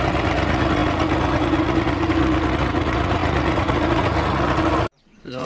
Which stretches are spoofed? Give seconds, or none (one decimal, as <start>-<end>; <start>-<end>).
0.0-5.5